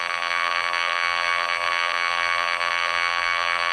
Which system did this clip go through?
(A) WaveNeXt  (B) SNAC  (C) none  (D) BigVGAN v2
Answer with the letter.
D